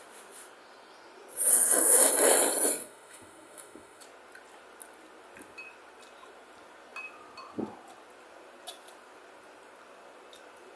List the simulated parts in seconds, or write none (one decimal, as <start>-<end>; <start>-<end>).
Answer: 1.5-2.1; 2.8-4.0